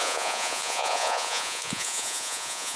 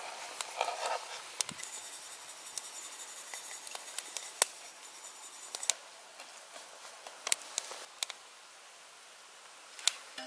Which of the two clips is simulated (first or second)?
first